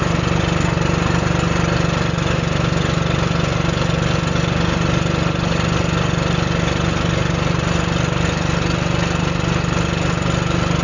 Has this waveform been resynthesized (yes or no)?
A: no